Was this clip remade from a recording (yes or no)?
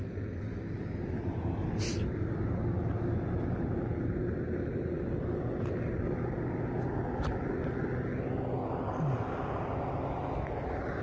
no